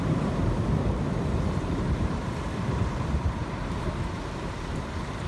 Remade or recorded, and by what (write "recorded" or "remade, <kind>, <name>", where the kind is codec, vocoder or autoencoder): remade, vocoder, BigVGAN v2